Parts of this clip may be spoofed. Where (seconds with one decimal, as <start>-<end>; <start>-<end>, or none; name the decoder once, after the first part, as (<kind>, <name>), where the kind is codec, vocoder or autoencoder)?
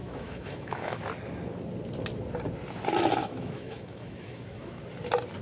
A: 0.0-1.0 (autoencoder, DAC-VAE); 3.2-4.8